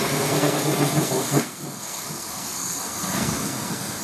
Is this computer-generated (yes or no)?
yes